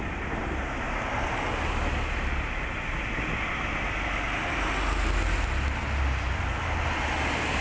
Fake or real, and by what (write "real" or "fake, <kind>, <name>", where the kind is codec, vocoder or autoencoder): real